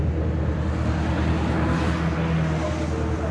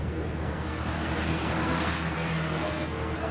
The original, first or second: first